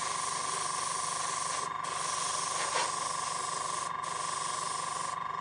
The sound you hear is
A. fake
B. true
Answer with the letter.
B